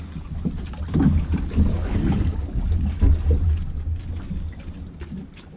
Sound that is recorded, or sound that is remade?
recorded